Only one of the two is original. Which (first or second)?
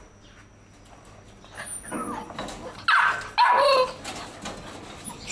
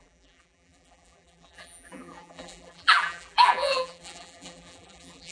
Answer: first